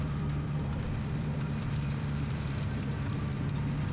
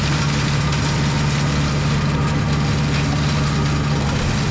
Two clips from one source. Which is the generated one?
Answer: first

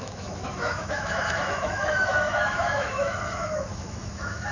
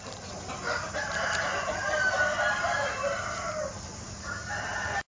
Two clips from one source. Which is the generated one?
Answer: first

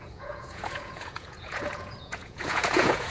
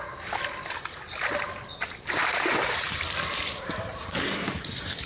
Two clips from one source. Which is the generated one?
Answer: first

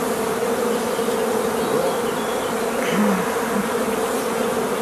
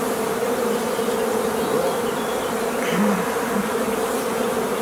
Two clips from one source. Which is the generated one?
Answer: second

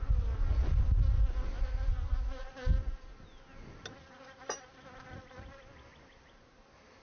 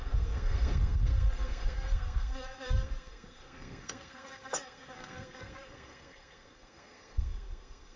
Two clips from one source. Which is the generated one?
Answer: second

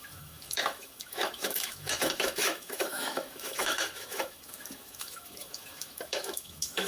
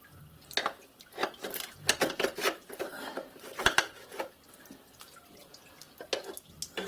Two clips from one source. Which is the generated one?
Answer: first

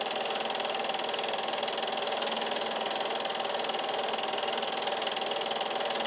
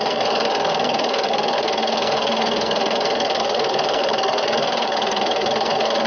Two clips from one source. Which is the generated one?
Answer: second